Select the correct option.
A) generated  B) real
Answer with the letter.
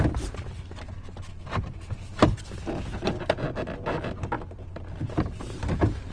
B